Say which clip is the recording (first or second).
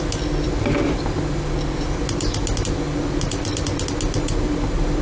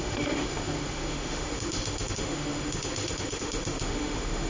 first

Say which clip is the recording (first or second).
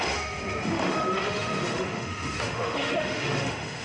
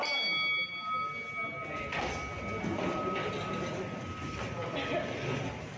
second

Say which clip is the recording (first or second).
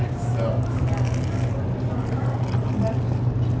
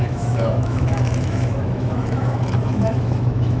first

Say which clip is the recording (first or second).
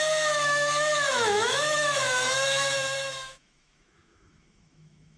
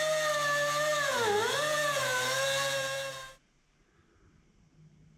second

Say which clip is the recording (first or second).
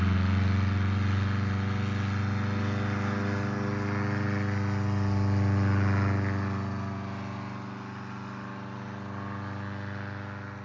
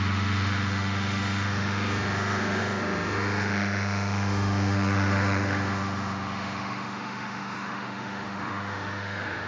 first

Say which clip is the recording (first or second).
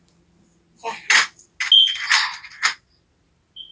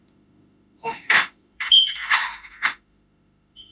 first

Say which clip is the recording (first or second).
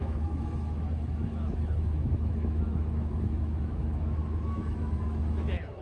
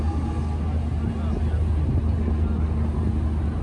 second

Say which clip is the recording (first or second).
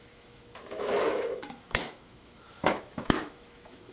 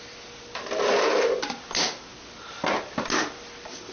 second